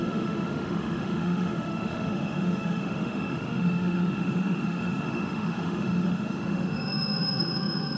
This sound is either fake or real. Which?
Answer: fake